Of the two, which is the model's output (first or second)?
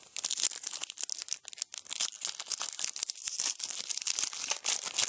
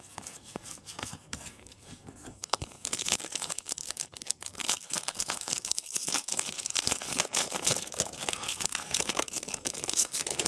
second